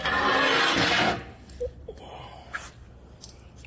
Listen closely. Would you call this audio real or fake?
real